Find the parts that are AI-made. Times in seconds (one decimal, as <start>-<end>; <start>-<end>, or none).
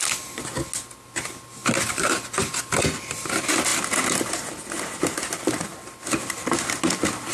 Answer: none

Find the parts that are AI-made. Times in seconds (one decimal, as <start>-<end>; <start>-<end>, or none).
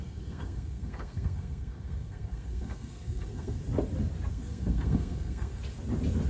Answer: 0.0-3.6; 4.3-5.6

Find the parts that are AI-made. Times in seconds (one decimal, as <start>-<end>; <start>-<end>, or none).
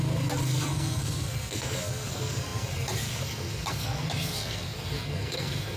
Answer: 0.0-5.8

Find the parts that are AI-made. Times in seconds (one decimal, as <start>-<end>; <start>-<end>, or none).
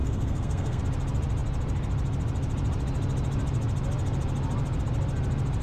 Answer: 0.0-0.8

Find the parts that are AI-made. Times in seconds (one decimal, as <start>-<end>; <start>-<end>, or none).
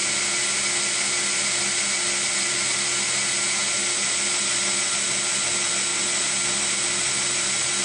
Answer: none